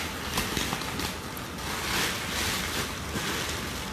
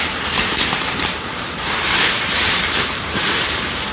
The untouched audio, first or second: first